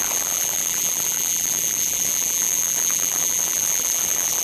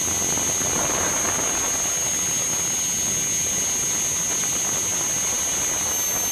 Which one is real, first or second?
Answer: second